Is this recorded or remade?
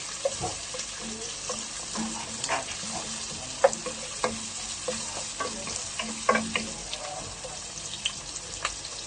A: recorded